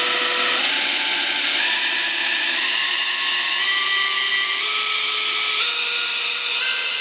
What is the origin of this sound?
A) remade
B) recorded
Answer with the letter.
B